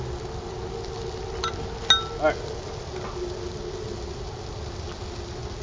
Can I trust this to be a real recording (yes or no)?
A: yes